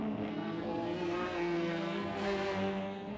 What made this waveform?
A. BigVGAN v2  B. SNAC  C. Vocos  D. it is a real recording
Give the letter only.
B